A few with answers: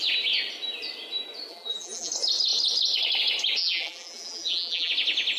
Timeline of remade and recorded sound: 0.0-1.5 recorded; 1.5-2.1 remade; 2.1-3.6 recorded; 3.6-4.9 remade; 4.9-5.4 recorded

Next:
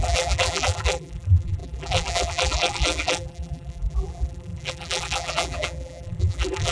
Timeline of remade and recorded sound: 0.0-6.7 remade